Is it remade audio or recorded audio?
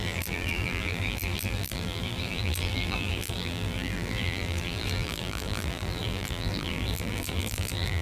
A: remade